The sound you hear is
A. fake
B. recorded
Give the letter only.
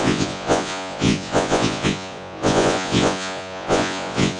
A